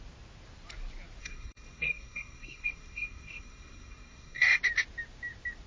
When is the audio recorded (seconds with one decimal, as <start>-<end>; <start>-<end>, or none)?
0.0-1.2; 4.6-5.7